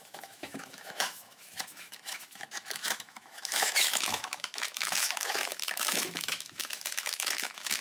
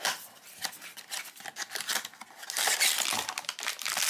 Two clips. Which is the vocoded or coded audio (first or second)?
first